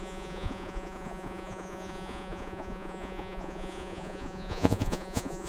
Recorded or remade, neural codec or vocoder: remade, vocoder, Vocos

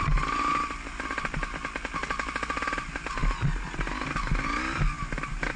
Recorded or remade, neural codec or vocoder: recorded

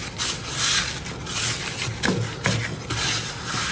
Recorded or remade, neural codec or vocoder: recorded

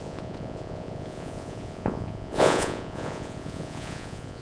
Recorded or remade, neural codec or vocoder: remade, vocoder, Vocos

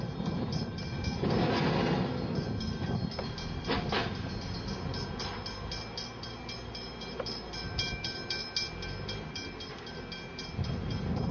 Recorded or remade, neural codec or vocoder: recorded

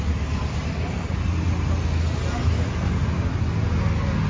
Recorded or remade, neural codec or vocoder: recorded